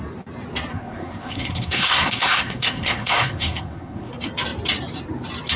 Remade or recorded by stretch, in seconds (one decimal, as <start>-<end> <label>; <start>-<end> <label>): 0.0-0.7 recorded; 0.7-4.1 remade; 4.1-5.6 recorded